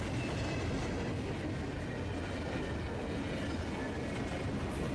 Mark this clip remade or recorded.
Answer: recorded